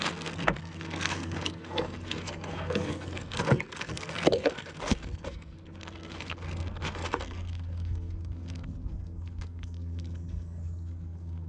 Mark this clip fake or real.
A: fake